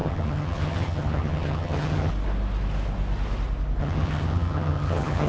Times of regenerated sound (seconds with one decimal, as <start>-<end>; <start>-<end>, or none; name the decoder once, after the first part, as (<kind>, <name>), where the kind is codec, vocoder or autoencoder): 0.0-2.1 (vocoder, HiFi-GAN); 3.8-5.3